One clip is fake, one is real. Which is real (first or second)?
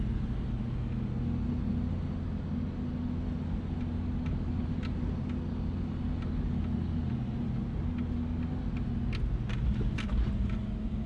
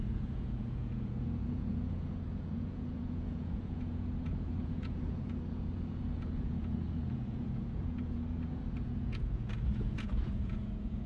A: first